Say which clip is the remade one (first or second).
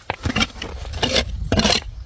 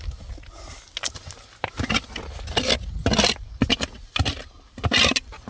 first